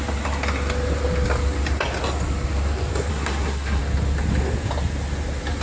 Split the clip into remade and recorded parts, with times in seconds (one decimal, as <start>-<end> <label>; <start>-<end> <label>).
0.0-3.1 recorded; 3.1-3.8 remade; 3.8-5.6 recorded